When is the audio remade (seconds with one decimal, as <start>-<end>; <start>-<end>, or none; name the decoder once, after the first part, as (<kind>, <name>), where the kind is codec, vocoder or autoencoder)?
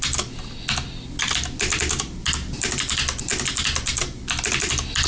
none